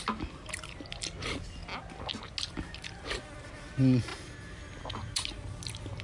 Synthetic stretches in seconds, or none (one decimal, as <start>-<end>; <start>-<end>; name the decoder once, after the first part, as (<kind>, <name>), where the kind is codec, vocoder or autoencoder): none